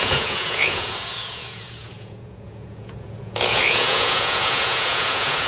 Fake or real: fake